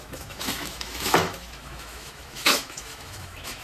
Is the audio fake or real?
fake